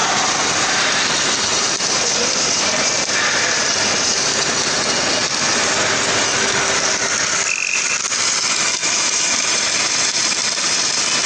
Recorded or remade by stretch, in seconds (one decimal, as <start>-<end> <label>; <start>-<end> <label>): 0.0-1.1 remade; 1.1-1.5 recorded; 1.5-4.7 remade; 4.7-5.2 recorded; 5.2-6.2 remade; 6.2-8.8 recorded; 8.8-10.0 remade; 10.0-11.3 recorded